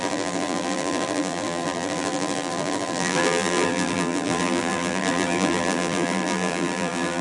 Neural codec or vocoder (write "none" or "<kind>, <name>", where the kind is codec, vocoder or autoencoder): vocoder, BigVGAN v2